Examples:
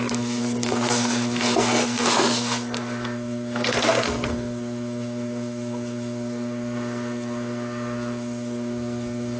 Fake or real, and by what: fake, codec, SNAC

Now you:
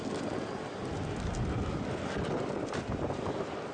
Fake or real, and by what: fake, vocoder, BigVGAN v2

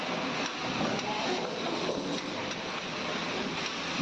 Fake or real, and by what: real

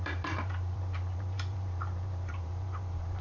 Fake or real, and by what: fake, vocoder, BigVGAN v2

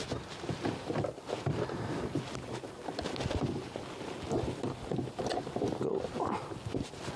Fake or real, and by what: real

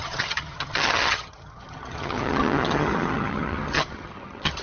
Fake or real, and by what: fake, vocoder, HiFi-GAN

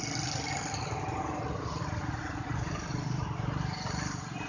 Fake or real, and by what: real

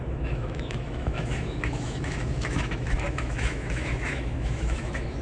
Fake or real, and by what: fake, autoencoder, DAC-VAE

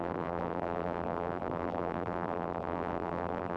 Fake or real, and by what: fake, vocoder, BigVGAN v2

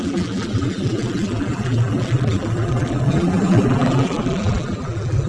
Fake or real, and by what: fake, vocoder, BigVGAN v2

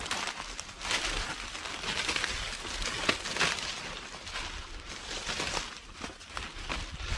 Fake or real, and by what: real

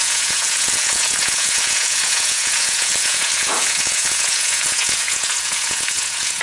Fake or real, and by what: fake, vocoder, Vocos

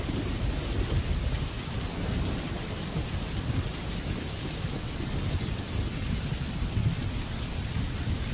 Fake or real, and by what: real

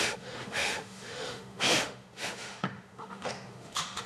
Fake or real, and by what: fake, autoencoder, DAC-VAE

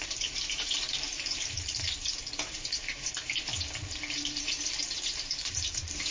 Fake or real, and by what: fake, vocoder, BigVGAN v2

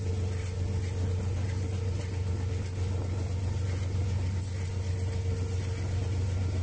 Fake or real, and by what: real